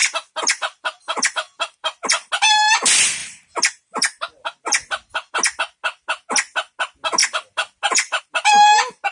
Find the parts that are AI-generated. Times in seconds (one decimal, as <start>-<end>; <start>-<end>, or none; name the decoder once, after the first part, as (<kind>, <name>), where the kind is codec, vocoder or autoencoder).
0.0-2.3 (vocoder, BigVGAN v2); 3.2-5.3; 7.2-8.2

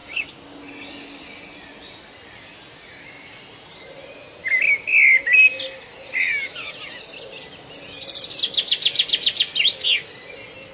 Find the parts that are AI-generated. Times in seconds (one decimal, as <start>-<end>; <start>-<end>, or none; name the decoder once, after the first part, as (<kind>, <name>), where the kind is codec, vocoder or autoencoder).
0.0-0.6 (codec, DAC)

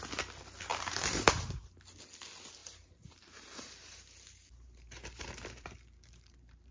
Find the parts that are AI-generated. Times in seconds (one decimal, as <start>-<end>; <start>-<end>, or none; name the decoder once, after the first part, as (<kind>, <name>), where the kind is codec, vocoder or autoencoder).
0.7-1.6 (vocoder, BigVGAN v2); 2.6-6.7

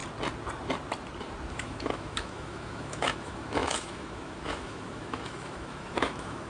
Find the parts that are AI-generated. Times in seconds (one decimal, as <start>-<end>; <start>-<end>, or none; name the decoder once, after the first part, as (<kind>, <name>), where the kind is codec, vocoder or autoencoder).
1.5-6.5 (autoencoder, DAC-VAE)

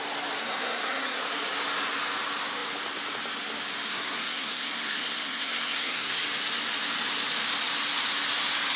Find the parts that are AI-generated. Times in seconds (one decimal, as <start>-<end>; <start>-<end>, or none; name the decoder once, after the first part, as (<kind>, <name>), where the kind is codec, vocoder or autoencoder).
0.4-1.2 (codec, SNAC); 3.9-6.2

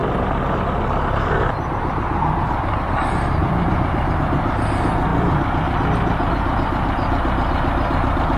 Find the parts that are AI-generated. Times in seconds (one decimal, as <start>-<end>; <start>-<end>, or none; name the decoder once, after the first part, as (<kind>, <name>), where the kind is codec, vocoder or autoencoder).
0.0-3.0 (vocoder, BigVGAN v2); 3.4-4.2; 5.1-8.4